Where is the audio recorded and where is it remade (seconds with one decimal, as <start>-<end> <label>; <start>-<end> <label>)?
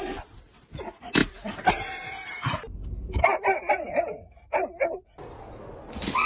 0.0-6.3 recorded